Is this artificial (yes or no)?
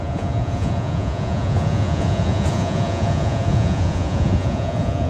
yes